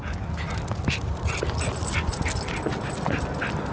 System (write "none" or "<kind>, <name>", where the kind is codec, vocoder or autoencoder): none